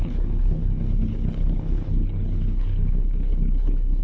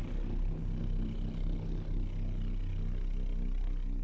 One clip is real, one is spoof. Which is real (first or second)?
second